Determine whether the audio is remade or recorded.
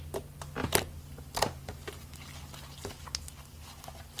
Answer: recorded